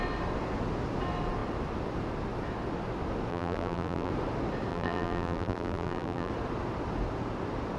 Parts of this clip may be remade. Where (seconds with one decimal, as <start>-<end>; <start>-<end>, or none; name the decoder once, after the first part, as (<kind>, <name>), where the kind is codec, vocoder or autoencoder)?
3.3-4.1 (vocoder, BigVGAN v2); 4.7-6.3